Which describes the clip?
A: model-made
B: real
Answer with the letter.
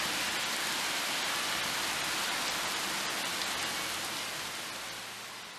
B